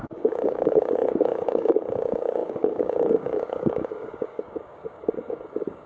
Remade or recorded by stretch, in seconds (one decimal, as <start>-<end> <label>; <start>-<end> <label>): 0.0-5.9 remade